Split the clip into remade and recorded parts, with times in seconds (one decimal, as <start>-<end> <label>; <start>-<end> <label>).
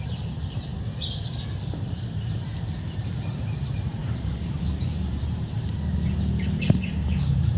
0.0-0.7 remade; 0.7-1.6 recorded; 1.6-7.6 remade